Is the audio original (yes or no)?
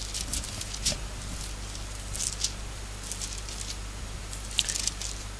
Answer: yes